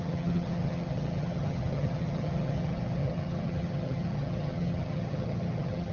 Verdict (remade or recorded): remade